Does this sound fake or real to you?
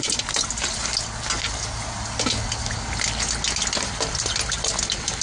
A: real